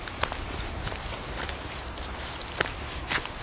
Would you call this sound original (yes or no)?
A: yes